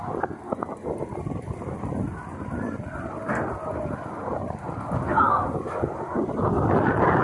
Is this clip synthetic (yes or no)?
no